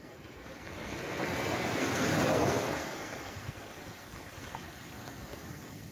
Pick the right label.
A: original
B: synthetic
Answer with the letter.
B